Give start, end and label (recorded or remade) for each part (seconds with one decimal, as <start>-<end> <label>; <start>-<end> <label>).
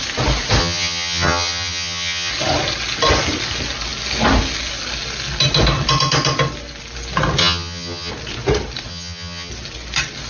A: 0.0-0.6 recorded; 0.6-2.3 remade; 2.3-7.4 recorded; 7.4-8.1 remade; 8.1-8.9 recorded; 8.9-9.5 remade; 9.5-10.3 recorded